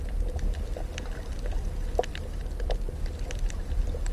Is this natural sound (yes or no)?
yes